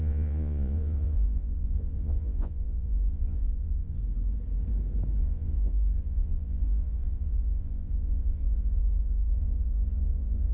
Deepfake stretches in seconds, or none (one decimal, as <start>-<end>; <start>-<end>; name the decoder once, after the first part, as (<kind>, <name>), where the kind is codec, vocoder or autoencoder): 0.0-4.0 (vocoder, Vocos); 5.2-10.5